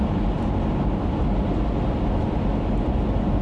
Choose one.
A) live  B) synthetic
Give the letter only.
A